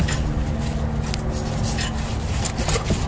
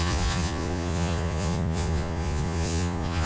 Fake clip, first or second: second